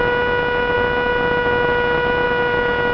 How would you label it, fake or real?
real